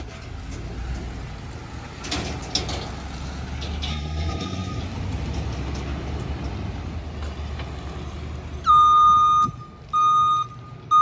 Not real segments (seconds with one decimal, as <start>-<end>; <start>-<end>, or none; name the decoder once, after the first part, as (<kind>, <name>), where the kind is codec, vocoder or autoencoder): 3.9-4.8 (codec, SNAC)